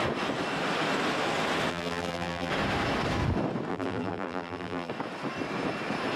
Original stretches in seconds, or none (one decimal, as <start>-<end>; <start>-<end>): 0.0-1.7; 2.5-3.7; 4.9-6.2